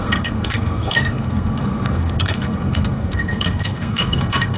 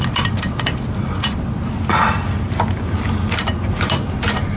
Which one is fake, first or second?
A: first